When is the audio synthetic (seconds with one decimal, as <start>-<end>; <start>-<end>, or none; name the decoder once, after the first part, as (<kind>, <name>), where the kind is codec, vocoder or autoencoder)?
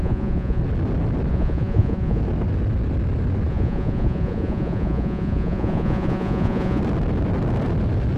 0.0-0.6 (vocoder, Vocos); 1.3-2.2; 3.5-6.8